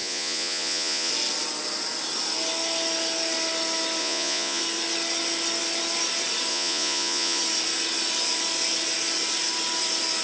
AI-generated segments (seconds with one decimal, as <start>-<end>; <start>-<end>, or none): 0.0-1.1; 4.0-4.6; 6.5-7.4